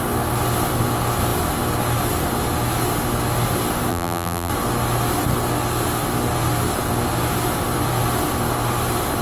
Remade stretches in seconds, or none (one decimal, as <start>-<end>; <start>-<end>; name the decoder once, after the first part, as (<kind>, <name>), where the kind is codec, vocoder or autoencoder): 3.9-4.5 (vocoder, BigVGAN v2)